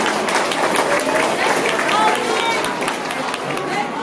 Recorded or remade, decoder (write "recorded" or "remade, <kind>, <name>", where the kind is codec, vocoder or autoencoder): recorded